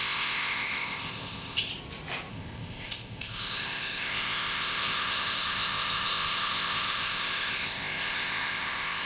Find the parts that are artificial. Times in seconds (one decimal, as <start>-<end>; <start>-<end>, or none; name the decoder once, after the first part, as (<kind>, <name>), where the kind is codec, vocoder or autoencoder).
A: 0.0-1.7 (codec, ZipCodec); 2.3-9.1

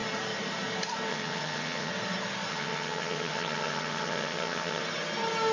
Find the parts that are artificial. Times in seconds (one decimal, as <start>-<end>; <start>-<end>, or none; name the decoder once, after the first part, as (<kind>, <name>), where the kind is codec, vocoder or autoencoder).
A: 1.1-1.9 (vocoder, HiFi-GAN); 2.5-4.8

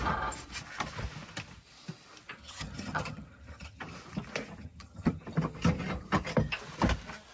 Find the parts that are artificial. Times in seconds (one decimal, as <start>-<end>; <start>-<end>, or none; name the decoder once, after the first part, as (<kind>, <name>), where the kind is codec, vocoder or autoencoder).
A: 2.4-3.8 (vocoder, HiFi-GAN); 4.6-5.2

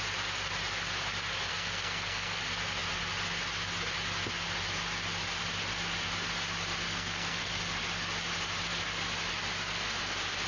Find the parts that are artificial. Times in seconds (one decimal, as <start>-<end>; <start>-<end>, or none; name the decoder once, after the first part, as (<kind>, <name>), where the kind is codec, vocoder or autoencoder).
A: 1.5-2.4 (codec, SNAC); 6.9-7.6

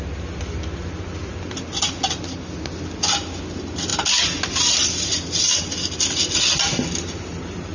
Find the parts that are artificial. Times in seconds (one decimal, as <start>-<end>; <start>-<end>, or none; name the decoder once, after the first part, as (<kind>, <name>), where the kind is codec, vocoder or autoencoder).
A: none

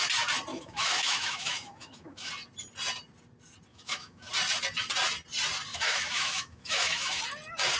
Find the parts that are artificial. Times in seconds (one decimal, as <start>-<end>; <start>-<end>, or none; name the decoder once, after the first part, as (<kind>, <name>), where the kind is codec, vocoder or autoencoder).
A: 0.5-2.3 (autoencoder, DAC-VAE); 3.7-4.3; 5.7-7.2

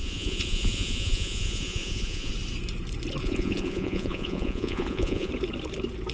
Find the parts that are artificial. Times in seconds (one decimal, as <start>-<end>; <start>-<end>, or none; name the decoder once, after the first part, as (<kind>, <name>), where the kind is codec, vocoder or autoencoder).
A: 0.0-2.3 (vocoder, Vocos); 3.2-5.3

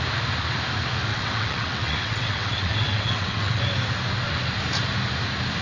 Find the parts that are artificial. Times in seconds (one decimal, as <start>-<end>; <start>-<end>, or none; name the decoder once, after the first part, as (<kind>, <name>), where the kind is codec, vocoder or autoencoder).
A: 1.1-3.6 (vocoder, WaveNeXt)